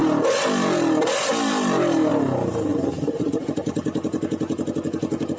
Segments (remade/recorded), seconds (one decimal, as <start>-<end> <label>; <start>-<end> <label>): 0.0-5.4 recorded